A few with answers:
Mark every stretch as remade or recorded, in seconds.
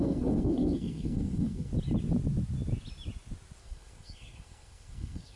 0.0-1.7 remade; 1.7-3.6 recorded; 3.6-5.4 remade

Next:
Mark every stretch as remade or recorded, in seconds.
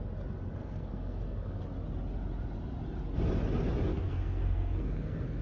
0.0-0.6 recorded; 0.6-1.6 remade; 1.6-3.9 recorded; 3.9-5.4 remade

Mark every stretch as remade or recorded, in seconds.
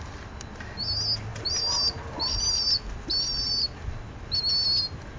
0.0-5.2 recorded